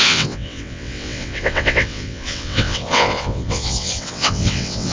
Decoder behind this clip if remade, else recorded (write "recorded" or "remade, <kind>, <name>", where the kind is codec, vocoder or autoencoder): remade, vocoder, WaveNeXt